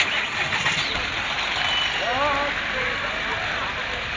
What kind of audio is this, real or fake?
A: real